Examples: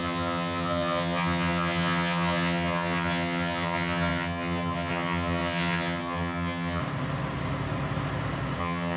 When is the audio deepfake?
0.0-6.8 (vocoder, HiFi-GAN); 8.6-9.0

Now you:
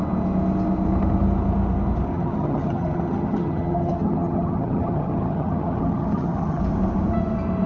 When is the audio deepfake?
2.1-6.6 (vocoder, HiFi-GAN)